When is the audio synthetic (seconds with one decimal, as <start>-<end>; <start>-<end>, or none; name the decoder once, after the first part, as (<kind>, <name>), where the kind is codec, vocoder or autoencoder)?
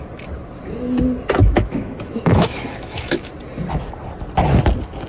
1.4-3.3 (autoencoder, DAC-VAE)